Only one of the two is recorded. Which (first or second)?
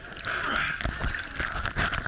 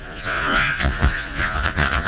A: first